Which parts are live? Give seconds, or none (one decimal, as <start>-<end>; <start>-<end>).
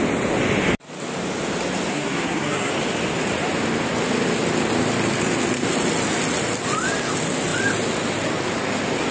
0.0-1.9; 2.7-9.1